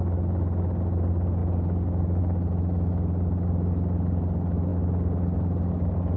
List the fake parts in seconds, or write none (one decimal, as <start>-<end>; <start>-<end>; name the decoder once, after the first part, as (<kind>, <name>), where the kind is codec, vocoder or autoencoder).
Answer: none